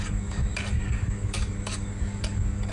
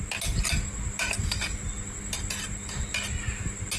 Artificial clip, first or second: first